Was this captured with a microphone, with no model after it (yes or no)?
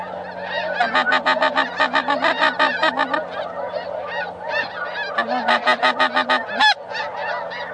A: yes